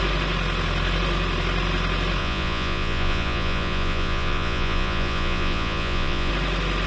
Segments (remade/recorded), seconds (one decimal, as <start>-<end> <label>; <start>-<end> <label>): 0.0-2.2 recorded; 2.2-6.3 remade; 6.3-6.9 recorded